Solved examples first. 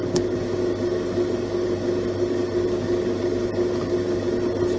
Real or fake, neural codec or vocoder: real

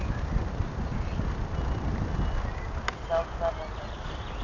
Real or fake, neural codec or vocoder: real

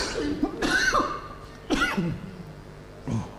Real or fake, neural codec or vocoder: real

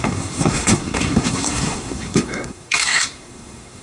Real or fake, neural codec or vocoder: fake, codec, SNAC